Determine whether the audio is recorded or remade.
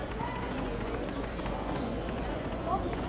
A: remade